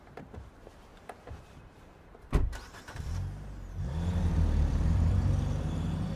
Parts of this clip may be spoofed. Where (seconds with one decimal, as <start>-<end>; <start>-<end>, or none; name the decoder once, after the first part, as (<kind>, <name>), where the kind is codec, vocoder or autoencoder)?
0.0-0.9 (vocoder, BigVGAN v2); 1.4-6.2